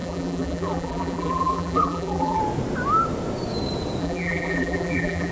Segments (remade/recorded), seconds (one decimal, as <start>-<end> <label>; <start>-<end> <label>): 0.0-2.4 remade; 2.4-4.0 recorded; 4.0-5.3 remade